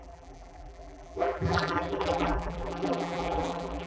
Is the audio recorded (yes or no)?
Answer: no